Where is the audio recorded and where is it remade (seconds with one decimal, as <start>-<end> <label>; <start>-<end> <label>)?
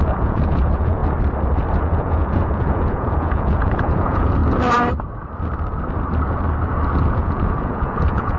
0.0-1.0 remade; 1.0-1.7 recorded; 1.7-4.4 remade; 4.4-7.1 recorded; 7.1-8.4 remade